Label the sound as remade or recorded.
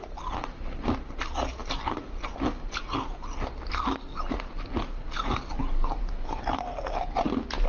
recorded